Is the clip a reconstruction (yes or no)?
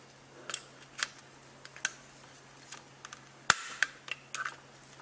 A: no